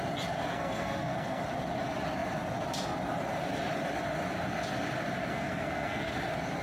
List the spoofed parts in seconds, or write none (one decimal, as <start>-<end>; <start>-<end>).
0.5-1.4; 5.3-6.1